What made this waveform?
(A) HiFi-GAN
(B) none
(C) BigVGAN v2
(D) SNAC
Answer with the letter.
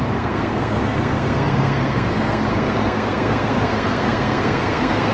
D